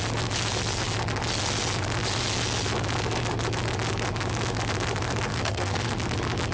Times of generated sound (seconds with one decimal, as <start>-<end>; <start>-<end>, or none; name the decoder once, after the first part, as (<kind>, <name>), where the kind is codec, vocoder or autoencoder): 5.3-5.9 (codec, SNAC)